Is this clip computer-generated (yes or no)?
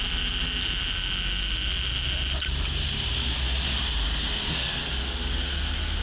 no